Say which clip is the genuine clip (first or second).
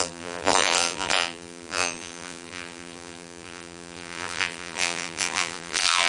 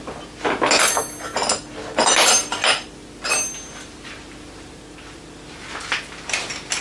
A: second